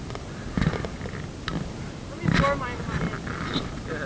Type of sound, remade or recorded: recorded